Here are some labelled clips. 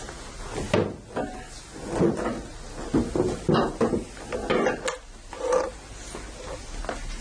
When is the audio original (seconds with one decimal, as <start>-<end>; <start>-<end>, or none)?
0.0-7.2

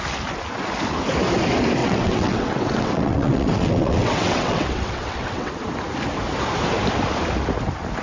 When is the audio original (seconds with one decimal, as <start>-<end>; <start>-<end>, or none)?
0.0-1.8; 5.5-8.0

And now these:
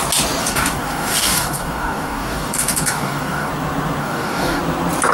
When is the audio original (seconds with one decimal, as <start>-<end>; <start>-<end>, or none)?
0.0-0.4; 3.5-4.0; 4.6-5.1

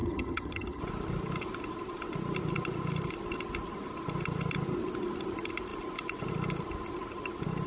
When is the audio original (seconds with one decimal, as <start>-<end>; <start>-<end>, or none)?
0.8-7.7

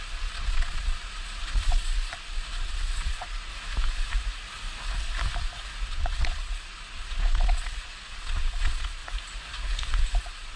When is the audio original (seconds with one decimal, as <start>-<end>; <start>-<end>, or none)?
3.5-5.9; 9.0-10.2

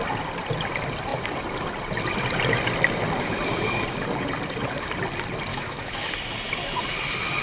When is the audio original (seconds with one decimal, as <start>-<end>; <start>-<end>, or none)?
0.0-5.5; 6.1-7.4